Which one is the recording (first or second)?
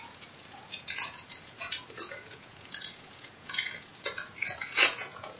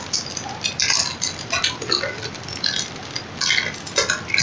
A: second